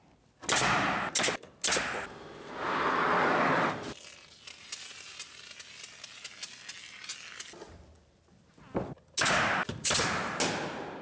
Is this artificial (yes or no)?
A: no